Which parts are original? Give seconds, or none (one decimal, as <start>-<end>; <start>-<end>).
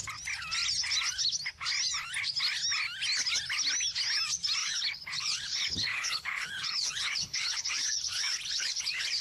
0.0-4.6